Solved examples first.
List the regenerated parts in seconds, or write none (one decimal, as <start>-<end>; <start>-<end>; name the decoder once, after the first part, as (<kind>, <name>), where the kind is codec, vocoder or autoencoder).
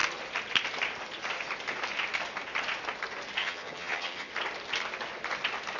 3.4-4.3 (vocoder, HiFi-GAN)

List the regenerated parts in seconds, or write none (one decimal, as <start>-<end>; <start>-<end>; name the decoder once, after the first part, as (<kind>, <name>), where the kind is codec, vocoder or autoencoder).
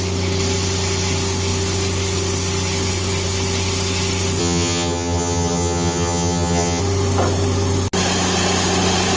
4.4-6.8 (vocoder, HiFi-GAN)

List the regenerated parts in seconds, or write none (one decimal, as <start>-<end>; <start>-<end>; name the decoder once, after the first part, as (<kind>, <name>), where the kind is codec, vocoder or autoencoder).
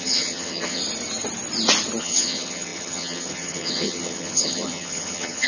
0.0-0.8 (vocoder, HiFi-GAN); 2.0-5.5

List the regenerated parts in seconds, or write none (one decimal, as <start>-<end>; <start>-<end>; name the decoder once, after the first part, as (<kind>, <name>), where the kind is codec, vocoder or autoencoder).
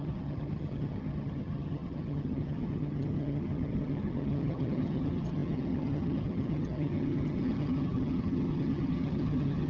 0.0-9.7 (vocoder, HiFi-GAN)